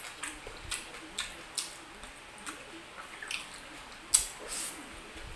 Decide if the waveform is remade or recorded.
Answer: recorded